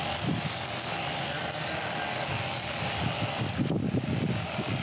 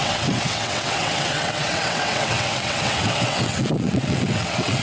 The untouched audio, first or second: first